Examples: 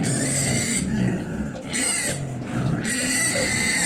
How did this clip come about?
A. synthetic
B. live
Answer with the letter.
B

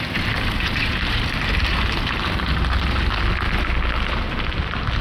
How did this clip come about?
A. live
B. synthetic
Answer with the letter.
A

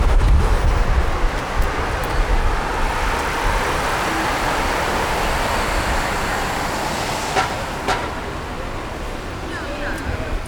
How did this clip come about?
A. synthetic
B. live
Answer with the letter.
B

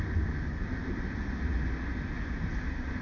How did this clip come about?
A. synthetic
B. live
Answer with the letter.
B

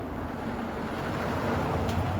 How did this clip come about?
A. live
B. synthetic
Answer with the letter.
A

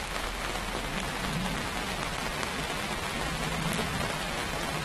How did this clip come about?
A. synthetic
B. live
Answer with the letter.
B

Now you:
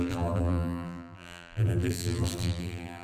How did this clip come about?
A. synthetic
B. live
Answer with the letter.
A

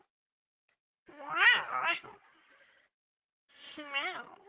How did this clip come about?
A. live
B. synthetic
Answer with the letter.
A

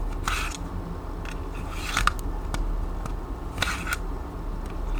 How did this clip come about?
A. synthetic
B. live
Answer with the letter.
B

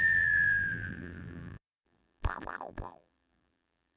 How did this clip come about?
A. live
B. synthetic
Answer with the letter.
B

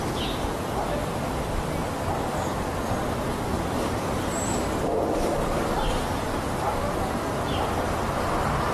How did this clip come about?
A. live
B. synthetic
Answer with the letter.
B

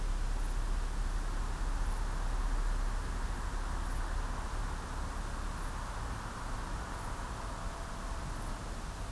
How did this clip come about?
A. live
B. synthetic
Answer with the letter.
A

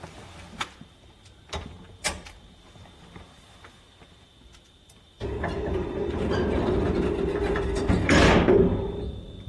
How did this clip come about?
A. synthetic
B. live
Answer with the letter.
A